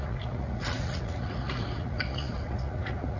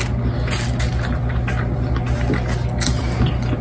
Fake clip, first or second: first